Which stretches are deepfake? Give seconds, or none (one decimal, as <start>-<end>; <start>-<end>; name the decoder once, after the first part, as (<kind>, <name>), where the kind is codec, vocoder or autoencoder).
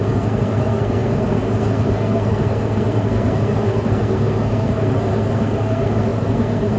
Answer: 0.0-6.8 (codec, SNAC)